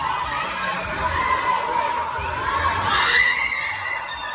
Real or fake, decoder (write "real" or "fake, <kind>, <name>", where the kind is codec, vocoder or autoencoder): real